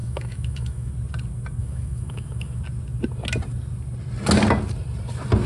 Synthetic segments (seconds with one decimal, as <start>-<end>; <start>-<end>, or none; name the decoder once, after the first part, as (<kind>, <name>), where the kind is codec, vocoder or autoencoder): 0.0-0.9 (autoencoder, DAC-VAE); 1.6-2.6